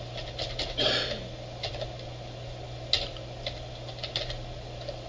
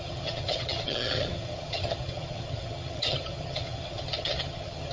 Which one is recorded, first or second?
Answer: first